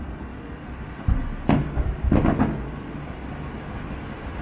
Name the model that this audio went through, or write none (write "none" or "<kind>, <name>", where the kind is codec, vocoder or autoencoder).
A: none